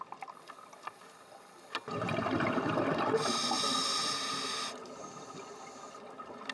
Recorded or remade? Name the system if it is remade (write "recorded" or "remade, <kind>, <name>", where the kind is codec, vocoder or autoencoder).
recorded